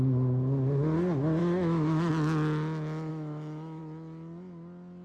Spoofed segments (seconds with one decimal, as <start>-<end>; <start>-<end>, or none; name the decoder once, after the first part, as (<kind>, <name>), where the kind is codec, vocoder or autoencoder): 1.4-2.1 (autoencoder, DAC-VAE); 3.1-3.8